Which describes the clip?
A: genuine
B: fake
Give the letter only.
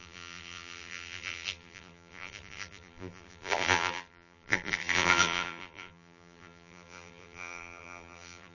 B